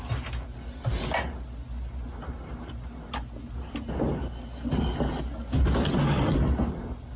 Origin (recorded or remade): recorded